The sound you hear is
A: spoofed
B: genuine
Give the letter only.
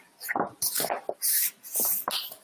B